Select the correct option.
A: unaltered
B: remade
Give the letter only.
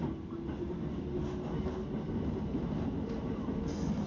A